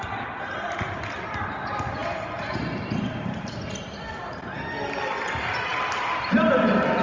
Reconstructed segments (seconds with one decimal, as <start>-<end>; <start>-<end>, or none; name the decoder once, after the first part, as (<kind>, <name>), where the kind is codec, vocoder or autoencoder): none